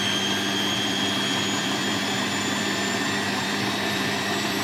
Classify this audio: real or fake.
fake